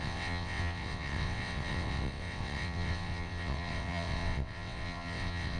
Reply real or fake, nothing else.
fake